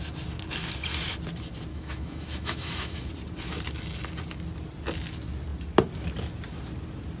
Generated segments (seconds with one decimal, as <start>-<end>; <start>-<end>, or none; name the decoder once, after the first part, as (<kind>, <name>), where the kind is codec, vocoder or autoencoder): 1.7-3.1 (autoencoder, DAC-VAE)